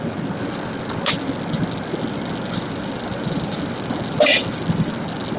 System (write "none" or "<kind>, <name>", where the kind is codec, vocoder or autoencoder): none